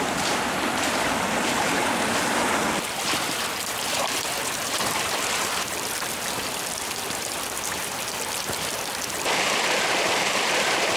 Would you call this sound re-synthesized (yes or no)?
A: yes